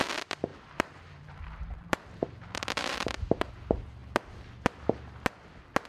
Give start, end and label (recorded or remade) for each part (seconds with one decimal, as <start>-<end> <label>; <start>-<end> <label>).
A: 0.0-0.5 recorded; 0.5-3.5 remade; 3.5-5.9 recorded